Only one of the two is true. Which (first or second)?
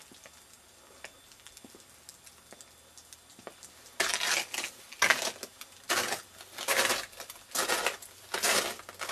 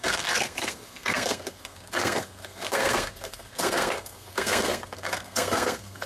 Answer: first